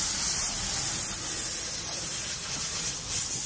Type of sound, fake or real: real